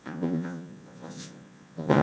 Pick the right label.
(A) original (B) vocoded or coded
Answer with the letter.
B